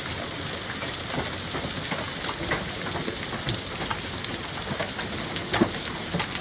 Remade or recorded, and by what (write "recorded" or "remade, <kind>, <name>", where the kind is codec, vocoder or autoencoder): recorded